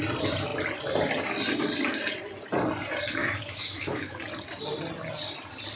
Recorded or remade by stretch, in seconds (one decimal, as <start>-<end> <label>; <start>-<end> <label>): 0.0-3.2 recorded; 3.2-4.2 remade; 4.2-5.8 recorded